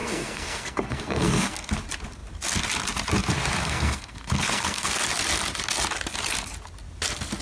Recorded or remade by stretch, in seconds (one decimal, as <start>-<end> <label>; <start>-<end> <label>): 0.0-1.7 remade; 1.7-3.6 recorded; 3.6-5.0 remade; 5.0-7.4 recorded